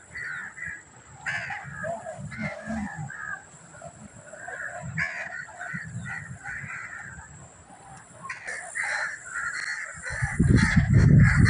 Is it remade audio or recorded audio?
recorded